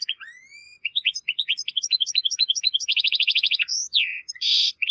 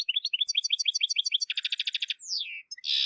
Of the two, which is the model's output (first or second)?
first